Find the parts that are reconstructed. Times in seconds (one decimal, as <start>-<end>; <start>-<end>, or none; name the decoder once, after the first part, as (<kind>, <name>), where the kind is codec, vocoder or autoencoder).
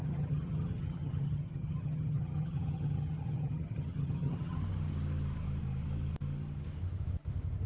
0.0-4.6 (vocoder, HiFi-GAN)